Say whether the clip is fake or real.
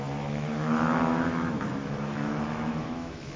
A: fake